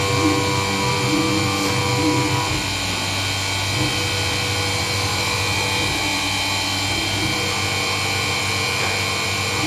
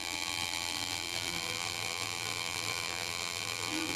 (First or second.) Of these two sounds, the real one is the first